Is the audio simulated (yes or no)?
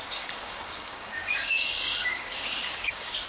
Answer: yes